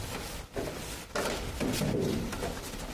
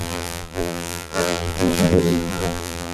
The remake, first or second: second